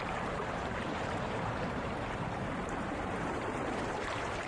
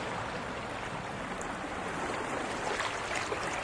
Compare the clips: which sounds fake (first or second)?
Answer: first